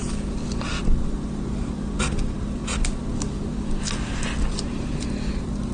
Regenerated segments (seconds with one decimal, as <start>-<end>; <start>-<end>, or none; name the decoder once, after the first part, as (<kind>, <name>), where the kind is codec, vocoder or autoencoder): none